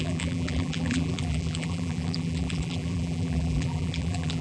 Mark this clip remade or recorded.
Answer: remade